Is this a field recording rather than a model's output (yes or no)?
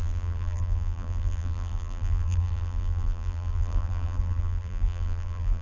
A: no